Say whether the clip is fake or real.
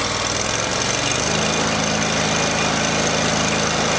real